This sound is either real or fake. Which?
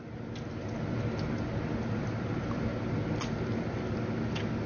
real